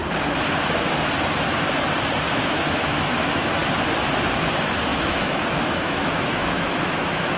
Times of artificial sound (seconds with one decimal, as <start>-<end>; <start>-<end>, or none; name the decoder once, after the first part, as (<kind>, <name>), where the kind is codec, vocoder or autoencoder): 2.4-3.6 (autoencoder, DAC-VAE); 4.4-7.4